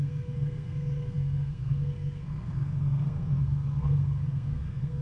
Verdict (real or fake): fake